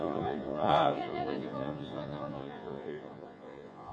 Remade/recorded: remade